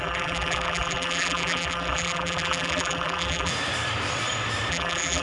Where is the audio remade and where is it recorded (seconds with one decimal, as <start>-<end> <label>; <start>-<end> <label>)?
0.0-3.5 remade; 3.5-4.7 recorded; 4.7-5.2 remade